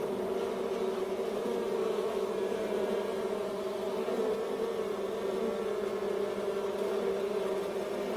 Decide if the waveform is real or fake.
real